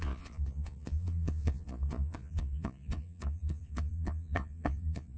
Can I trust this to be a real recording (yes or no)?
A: no